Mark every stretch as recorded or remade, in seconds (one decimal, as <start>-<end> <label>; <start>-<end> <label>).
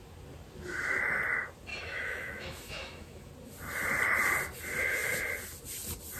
0.0-1.7 recorded; 1.7-3.3 remade; 3.3-6.2 recorded